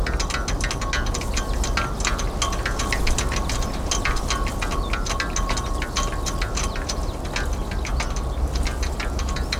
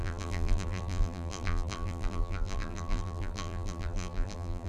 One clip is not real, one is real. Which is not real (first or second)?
second